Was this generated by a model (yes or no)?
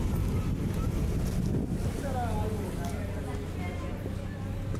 no